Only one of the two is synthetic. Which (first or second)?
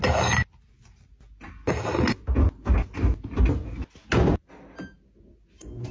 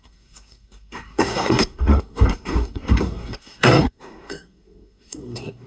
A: second